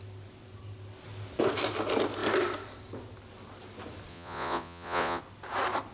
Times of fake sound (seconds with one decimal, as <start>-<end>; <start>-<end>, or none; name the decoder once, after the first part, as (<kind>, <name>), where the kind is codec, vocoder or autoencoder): 4.1-5.2 (vocoder, Vocos)